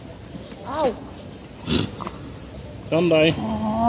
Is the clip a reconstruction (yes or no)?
no